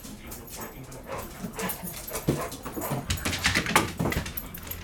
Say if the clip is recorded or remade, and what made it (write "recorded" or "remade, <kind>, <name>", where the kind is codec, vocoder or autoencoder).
recorded